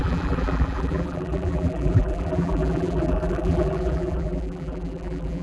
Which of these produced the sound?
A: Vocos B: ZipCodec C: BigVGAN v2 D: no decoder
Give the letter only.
C